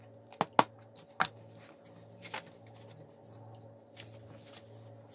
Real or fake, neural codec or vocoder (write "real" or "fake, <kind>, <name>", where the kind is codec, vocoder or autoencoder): real